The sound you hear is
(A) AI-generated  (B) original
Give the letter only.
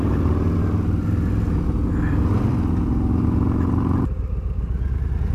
B